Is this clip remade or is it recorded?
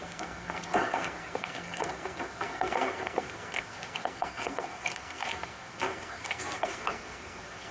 remade